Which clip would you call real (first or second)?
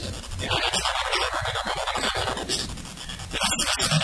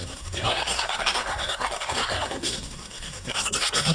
first